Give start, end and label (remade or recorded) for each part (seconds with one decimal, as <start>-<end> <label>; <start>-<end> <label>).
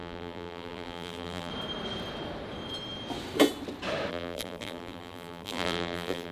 0.0-1.5 remade; 1.5-4.1 recorded; 4.1-6.3 remade